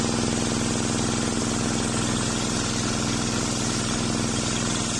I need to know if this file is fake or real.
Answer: real